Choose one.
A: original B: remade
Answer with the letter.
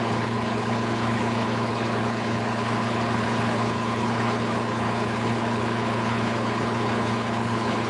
B